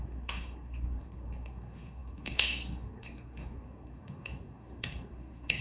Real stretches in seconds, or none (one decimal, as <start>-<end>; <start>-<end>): none

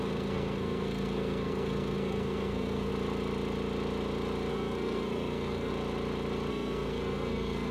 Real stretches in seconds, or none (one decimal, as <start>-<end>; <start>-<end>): 2.9-4.5; 5.7-6.5

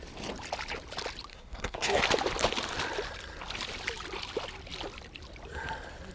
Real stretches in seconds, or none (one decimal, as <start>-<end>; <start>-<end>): 0.0-1.3; 2.0-6.1

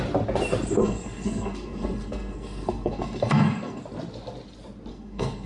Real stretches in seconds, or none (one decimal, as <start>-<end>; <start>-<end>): 0.0-0.8; 3.8-4.9

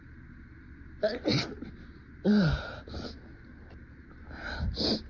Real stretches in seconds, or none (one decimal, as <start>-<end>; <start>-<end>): 0.0-5.1